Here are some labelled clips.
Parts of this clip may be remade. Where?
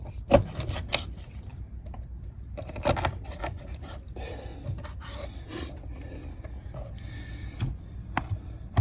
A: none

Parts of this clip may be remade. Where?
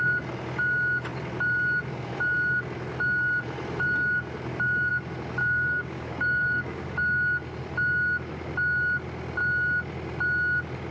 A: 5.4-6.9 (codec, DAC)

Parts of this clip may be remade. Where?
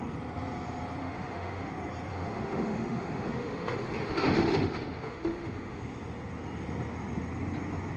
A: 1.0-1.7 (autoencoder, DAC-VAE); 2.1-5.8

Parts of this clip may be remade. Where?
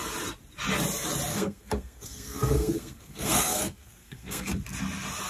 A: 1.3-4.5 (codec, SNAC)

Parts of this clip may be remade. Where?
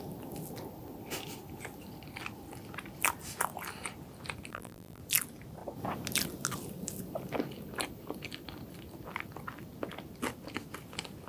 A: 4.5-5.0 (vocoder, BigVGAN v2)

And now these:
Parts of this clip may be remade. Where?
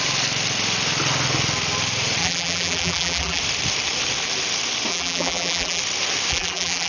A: 2.2-3.4 (vocoder, BigVGAN v2); 4.9-5.8; 6.3-6.9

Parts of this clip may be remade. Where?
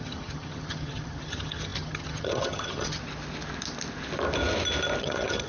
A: 0.0-3.0 (vocoder, HiFi-GAN); 5.0-5.5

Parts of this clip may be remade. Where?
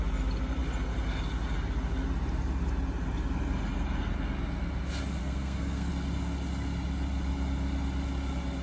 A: 5.2-5.9 (codec, SNAC)